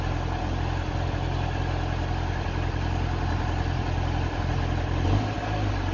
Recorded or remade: recorded